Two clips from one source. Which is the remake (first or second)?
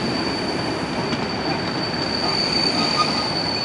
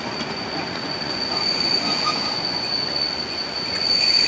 second